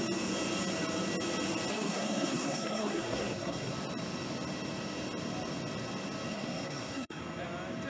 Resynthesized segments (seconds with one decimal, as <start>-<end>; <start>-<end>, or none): 1.7-3.7; 6.3-7.2